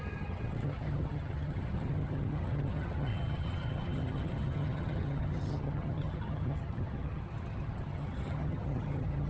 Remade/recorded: remade